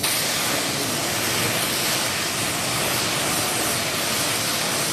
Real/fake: real